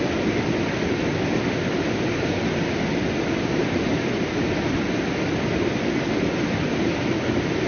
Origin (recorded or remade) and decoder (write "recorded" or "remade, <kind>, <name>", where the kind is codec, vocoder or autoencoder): recorded